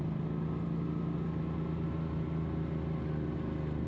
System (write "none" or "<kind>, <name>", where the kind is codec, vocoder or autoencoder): none